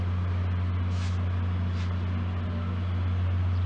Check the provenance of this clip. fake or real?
real